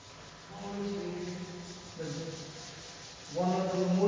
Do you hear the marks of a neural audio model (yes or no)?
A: no